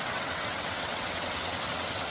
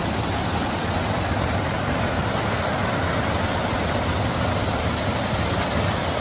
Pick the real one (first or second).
second